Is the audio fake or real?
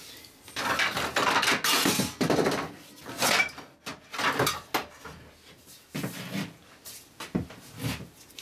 real